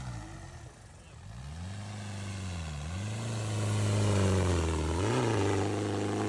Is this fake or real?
real